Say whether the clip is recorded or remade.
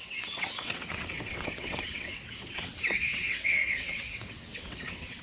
remade